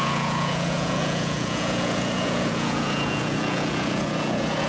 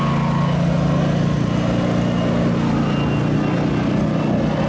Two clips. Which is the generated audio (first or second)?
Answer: first